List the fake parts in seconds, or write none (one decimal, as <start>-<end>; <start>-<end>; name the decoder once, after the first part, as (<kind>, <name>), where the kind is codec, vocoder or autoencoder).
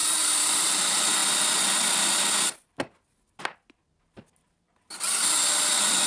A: 0.0-0.7 (vocoder, BigVGAN v2)